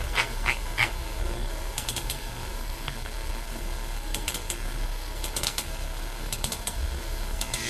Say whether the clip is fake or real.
fake